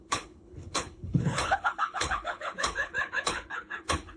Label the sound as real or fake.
fake